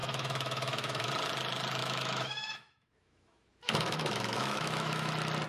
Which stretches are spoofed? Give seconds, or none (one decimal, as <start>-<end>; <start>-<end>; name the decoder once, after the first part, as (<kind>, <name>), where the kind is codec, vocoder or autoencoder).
0.0-1.1 (autoencoder, DAC-VAE); 1.8-5.1

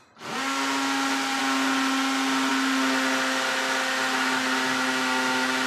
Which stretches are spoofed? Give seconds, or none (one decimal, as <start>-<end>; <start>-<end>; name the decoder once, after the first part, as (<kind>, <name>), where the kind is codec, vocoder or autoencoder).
none

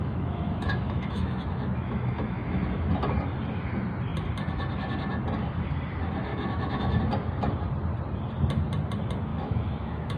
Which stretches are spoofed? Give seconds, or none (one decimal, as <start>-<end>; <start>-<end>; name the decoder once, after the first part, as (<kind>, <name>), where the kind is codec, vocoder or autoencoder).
0.0-2.9 (autoencoder, DAC-VAE); 6.3-7.0; 9.3-10.2

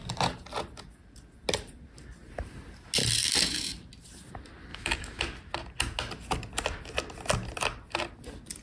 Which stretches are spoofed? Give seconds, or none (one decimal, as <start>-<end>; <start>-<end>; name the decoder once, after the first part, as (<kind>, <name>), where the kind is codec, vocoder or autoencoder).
4.7-5.2 (autoencoder, DAC-VAE)

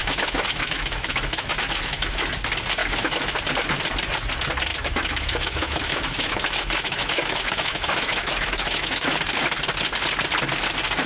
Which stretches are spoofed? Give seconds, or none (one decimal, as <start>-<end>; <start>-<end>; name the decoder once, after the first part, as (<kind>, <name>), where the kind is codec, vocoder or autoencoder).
0.0-2.3 (autoencoder, DAC-VAE); 2.8-3.3; 4.7-9.1

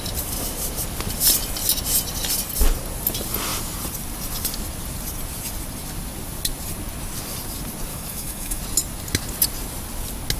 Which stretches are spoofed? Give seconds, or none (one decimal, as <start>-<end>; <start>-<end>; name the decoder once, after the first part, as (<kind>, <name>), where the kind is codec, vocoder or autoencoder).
7.9-8.6 (autoencoder, DAC-VAE)